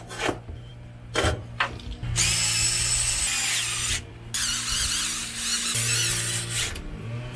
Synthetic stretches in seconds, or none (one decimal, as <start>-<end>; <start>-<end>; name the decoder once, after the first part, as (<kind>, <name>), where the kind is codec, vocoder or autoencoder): none